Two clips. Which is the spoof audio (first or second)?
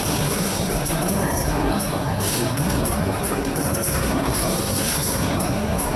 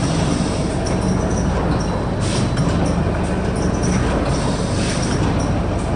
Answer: first